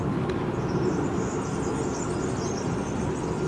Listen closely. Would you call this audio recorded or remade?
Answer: remade